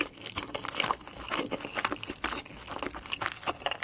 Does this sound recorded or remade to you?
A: recorded